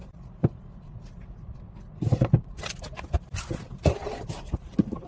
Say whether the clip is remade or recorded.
recorded